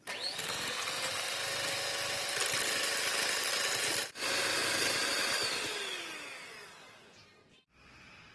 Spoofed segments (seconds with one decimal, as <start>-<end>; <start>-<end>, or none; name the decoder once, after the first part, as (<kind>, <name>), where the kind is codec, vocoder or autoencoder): none